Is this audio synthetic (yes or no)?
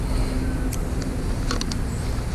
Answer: no